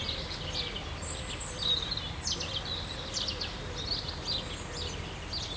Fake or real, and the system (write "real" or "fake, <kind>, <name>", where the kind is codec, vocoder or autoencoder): real